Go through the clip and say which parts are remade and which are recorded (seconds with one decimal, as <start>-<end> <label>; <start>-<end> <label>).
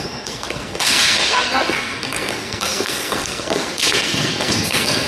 0.0-5.1 remade